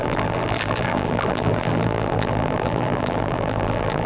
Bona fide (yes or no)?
no